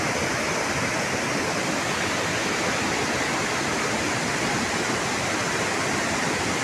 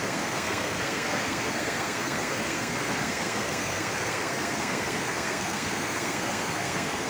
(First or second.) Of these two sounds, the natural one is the first